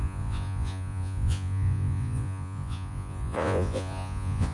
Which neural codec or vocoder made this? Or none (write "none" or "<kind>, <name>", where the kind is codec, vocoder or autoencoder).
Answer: vocoder, Vocos